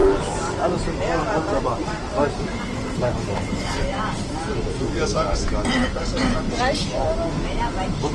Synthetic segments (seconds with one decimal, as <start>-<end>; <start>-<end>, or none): 0.0-4.9

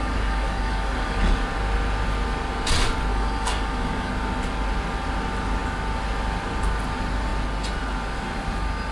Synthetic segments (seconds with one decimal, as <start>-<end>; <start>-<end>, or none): 0.0-1.2; 3.1-4.1

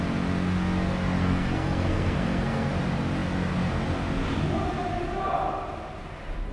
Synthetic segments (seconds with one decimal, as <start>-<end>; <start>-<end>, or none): 1.2-2.7

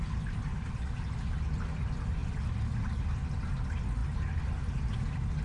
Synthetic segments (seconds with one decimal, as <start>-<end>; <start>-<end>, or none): none

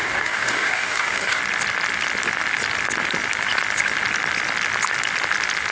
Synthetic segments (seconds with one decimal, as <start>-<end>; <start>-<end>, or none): 0.0-1.4